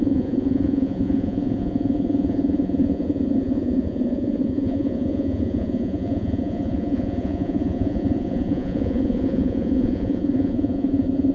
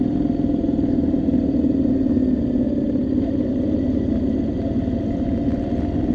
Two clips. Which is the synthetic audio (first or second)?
first